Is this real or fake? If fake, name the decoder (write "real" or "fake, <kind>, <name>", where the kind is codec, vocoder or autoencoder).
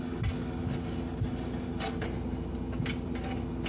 real